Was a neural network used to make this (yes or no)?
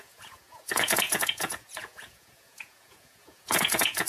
yes